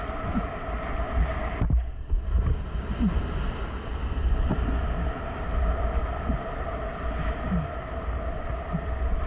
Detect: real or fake real